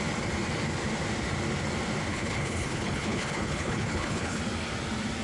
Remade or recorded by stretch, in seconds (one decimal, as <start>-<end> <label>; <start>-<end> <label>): 0.0-2.1 recorded; 2.1-4.4 remade; 4.4-5.2 recorded